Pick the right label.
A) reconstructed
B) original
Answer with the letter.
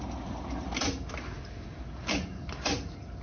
A